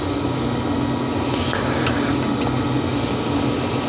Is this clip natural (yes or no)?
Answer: yes